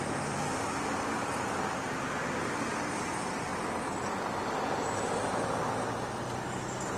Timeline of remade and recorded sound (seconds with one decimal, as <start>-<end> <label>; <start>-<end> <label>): 0.0-7.0 recorded